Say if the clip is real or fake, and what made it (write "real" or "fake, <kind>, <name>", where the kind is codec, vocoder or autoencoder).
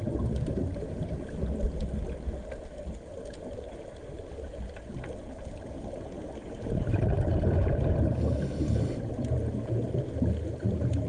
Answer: real